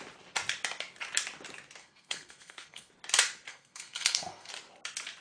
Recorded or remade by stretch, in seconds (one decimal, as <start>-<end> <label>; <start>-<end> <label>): 0.0-1.8 recorded; 1.8-2.9 remade; 2.9-3.5 recorded; 3.5-4.5 remade; 4.5-5.2 recorded